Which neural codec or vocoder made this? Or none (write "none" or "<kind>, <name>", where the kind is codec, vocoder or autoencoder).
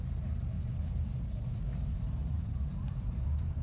vocoder, BigVGAN v2